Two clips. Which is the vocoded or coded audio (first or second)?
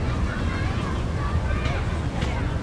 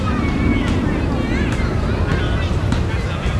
first